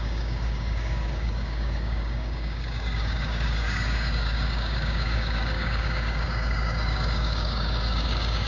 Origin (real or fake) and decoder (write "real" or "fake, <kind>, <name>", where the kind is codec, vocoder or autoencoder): fake, codec, DAC